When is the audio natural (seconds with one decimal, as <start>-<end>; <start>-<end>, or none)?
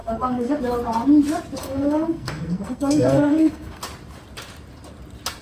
0.6-1.6; 3.8-5.4